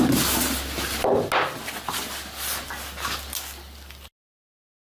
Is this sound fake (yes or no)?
no